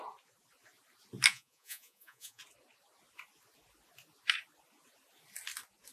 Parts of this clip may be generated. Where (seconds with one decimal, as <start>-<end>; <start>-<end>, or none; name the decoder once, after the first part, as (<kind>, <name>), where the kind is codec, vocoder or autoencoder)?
1.3-2.4 (vocoder, Vocos)